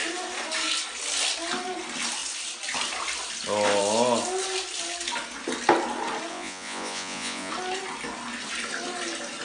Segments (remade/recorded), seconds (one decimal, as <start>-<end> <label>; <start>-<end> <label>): 0.0-6.3 recorded; 6.3-7.5 remade; 7.5-9.4 recorded